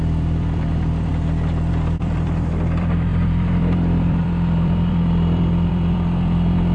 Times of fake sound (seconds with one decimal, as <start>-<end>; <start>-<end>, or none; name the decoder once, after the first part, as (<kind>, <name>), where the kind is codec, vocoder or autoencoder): 0.0-1.1 (vocoder, BigVGAN v2); 1.7-6.7

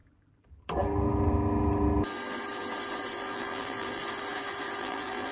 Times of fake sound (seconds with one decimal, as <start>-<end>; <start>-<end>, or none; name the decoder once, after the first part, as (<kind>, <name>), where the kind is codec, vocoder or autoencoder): 3.2-4.0 (vocoder, BigVGAN v2); 4.8-5.3

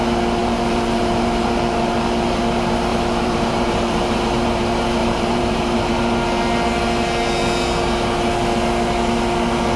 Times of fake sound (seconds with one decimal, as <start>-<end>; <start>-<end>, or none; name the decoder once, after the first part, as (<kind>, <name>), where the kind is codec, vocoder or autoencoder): 0.4-2.4 (vocoder, BigVGAN v2); 2.9-4.2; 5.0-5.9

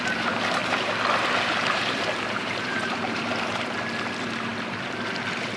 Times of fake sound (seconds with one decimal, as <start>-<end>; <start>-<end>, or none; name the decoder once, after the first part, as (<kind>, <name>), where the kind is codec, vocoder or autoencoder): 0.6-3.3 (vocoder, BigVGAN v2)